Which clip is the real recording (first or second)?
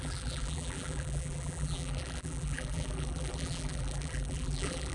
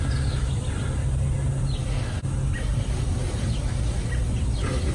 second